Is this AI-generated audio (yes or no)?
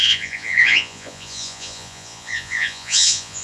yes